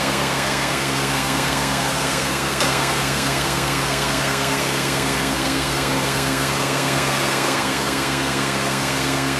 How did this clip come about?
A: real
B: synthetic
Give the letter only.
B